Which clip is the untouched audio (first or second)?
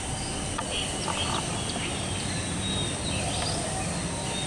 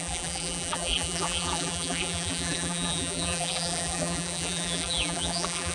first